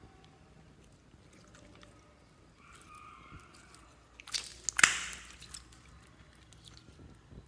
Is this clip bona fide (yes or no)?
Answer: yes